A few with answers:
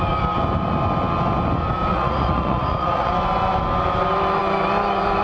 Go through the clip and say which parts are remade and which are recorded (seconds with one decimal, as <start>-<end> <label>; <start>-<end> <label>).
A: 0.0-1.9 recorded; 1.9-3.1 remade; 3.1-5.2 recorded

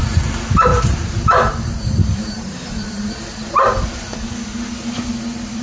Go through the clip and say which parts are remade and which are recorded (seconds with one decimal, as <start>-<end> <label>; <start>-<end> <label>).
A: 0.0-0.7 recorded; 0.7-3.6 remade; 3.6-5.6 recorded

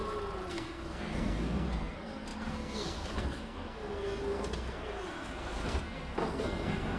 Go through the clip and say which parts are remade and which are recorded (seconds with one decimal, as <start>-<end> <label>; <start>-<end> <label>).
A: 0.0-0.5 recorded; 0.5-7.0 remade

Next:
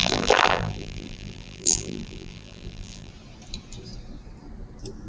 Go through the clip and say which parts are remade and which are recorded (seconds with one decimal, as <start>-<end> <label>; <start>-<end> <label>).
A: 0.0-3.1 remade; 3.1-5.1 recorded

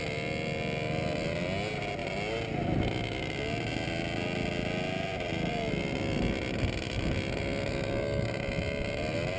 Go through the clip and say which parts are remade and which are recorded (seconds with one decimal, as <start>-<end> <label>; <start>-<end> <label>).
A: 0.0-9.4 recorded

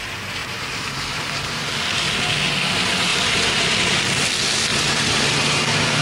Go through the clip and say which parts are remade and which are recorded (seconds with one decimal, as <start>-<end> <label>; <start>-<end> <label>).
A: 0.0-0.4 recorded; 0.4-1.6 remade; 1.6-3.1 recorded; 3.1-4.0 remade; 4.0-4.7 recorded; 4.7-5.6 remade; 5.6-6.0 recorded

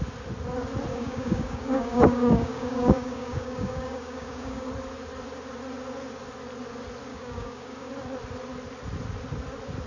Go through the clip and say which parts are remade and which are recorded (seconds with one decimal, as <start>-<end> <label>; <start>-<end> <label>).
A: 0.0-0.9 recorded; 0.9-4.7 remade; 4.7-7.1 recorded; 7.1-7.9 remade; 7.9-9.9 recorded

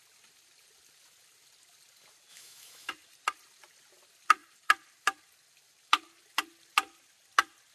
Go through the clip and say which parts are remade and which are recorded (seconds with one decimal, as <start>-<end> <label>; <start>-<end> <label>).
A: 0.0-2.3 recorded; 2.3-2.9 remade; 2.9-7.7 recorded